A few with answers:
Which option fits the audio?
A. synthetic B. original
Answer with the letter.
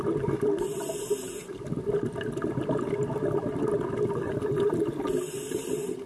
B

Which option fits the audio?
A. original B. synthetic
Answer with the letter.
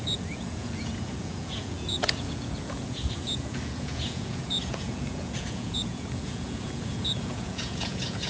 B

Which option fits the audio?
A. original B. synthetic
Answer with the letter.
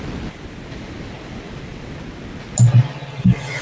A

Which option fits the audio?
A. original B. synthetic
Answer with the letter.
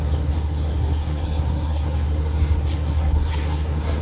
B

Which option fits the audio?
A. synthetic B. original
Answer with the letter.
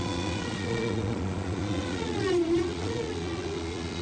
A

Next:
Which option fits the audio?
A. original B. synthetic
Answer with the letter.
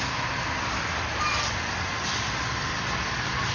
A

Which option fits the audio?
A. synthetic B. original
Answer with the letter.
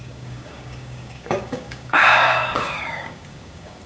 A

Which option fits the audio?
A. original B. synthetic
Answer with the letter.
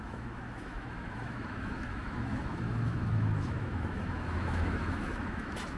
B